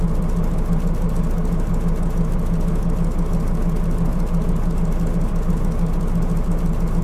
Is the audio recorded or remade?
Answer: recorded